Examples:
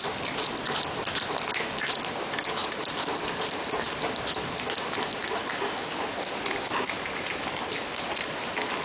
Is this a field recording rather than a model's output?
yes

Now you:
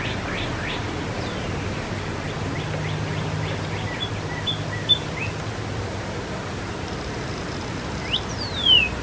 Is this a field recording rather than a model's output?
yes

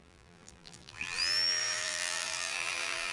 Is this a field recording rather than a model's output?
no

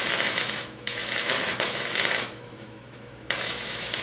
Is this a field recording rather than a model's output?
no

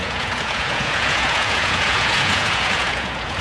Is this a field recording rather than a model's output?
no